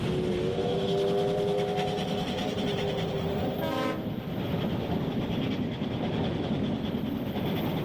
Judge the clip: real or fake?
real